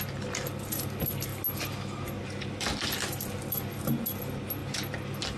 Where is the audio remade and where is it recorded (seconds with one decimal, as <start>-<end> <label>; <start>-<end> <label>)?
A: 0.0-5.4 recorded